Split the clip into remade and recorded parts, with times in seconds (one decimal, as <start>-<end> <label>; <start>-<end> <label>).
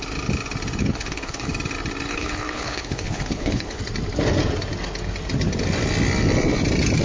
0.0-0.8 recorded; 0.8-1.5 remade; 1.5-2.1 recorded; 2.1-3.8 remade; 3.8-7.0 recorded